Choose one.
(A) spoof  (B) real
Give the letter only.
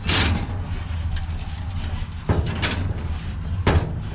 B